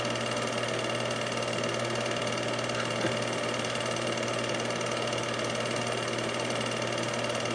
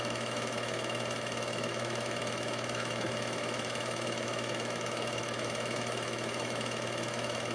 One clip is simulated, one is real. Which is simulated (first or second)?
second